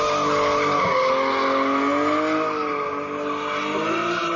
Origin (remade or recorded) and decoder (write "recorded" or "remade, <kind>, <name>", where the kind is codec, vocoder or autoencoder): recorded